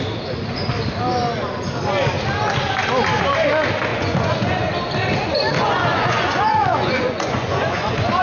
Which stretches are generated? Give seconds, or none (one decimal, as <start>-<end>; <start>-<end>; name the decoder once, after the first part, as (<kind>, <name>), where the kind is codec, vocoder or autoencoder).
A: 3.9-4.7 (vocoder, Vocos); 5.6-8.2